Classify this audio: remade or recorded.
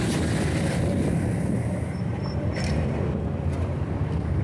recorded